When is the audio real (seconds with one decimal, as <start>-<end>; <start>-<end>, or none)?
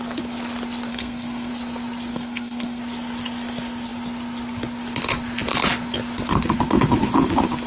0.0-0.9; 1.5-2.1; 2.8-7.7